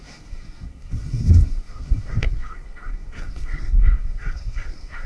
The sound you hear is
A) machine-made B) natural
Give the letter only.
A